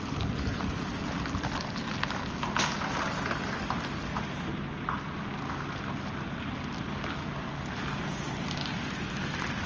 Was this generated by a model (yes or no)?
no